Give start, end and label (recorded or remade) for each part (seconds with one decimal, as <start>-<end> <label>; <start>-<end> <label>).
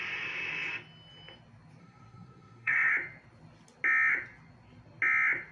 0.0-1.8 recorded; 1.8-2.9 remade; 2.9-5.5 recorded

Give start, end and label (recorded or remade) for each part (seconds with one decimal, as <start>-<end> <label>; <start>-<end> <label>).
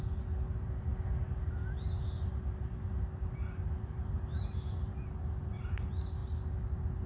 0.0-7.1 recorded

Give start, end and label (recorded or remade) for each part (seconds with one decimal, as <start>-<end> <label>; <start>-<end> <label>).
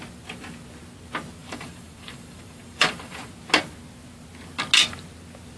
0.0-1.4 recorded; 1.4-3.3 remade; 3.3-5.6 recorded